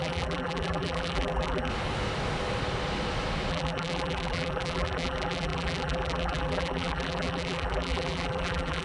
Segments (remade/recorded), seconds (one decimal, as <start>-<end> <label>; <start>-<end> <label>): 0.0-1.7 remade; 1.7-3.5 recorded; 3.5-8.8 remade